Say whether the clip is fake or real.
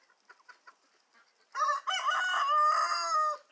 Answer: real